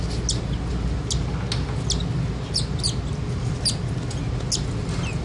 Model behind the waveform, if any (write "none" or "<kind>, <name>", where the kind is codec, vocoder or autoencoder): none